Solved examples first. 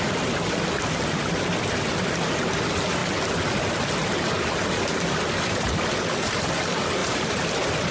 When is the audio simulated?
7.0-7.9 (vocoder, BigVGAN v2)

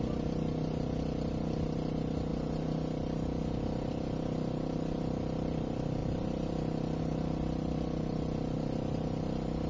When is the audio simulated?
none

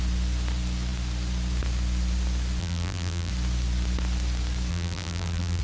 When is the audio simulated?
2.6-3.3 (vocoder, BigVGAN v2); 4.7-5.6

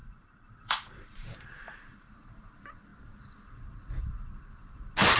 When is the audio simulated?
0.0-2.1 (vocoder, BigVGAN v2)

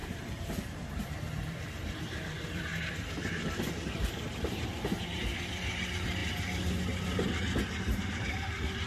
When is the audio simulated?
0.0-6.2 (vocoder, BigVGAN v2); 7.6-8.9